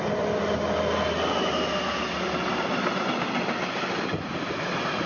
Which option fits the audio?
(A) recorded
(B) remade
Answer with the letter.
A